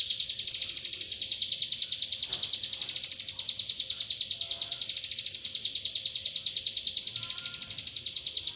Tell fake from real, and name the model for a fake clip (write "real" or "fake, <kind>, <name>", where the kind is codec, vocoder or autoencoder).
real